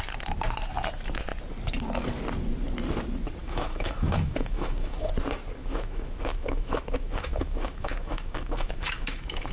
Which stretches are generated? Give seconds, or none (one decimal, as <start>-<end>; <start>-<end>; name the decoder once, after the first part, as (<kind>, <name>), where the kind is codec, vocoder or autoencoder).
3.4-5.1 (autoencoder, DAC-VAE); 5.6-9.5

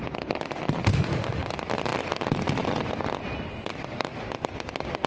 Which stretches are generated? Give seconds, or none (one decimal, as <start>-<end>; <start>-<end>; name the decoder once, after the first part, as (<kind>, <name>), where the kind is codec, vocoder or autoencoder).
0.9-1.5 (autoencoder, DAC-VAE)

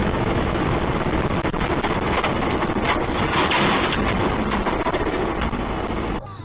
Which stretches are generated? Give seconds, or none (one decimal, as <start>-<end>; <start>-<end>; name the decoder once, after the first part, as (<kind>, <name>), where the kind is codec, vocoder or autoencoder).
0.0-0.6 (autoencoder, DAC-VAE)

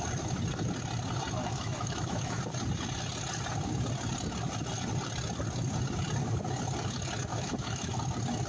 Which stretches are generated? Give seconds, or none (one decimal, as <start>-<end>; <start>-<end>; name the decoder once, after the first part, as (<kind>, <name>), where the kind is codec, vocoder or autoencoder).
1.4-2.4 (autoencoder, DAC-VAE); 7.3-7.9

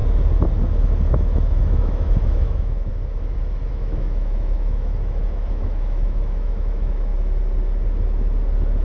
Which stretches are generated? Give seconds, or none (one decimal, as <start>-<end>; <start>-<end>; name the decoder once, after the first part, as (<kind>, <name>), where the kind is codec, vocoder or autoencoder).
1.1-2.9 (autoencoder, DAC-VAE); 3.7-7.1

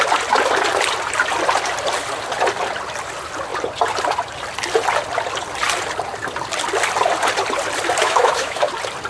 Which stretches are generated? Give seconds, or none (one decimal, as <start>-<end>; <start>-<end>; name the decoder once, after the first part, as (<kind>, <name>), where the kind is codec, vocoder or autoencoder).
8.0-8.7 (autoencoder, DAC-VAE)